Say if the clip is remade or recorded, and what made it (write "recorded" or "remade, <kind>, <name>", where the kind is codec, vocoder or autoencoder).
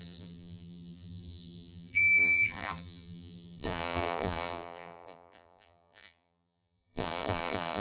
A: remade, vocoder, BigVGAN v2